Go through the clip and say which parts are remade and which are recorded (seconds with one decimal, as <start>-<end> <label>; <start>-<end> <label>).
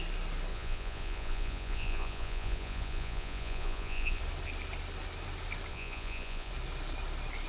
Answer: 0.0-0.5 recorded; 0.5-4.2 remade; 4.2-5.7 recorded; 5.7-6.5 remade; 6.5-7.5 recorded